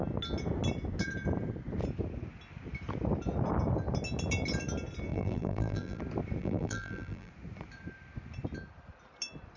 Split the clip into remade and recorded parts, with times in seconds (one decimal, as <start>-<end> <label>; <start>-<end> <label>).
0.0-5.1 recorded; 5.1-6.0 remade; 6.0-6.4 recorded; 6.4-7.3 remade; 7.3-9.6 recorded